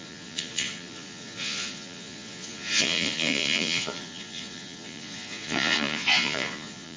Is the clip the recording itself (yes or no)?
no